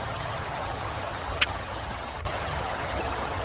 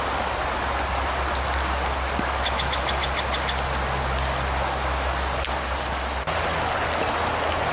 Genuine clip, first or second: second